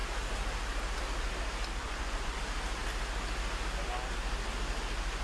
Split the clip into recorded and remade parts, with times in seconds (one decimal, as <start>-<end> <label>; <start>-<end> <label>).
0.0-1.8 recorded; 1.8-2.4 remade; 2.4-5.2 recorded